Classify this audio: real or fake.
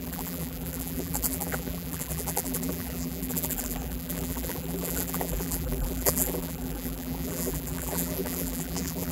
fake